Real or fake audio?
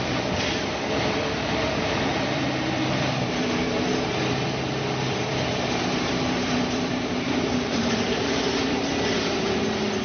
fake